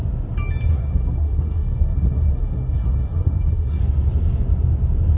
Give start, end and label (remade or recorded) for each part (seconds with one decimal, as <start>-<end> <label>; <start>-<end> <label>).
0.0-0.7 recorded; 0.7-3.8 remade; 3.8-5.2 recorded